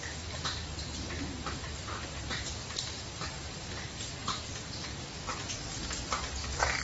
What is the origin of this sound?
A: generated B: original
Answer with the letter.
B